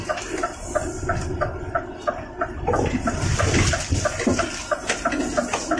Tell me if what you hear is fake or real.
real